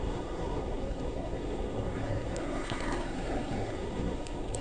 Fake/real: fake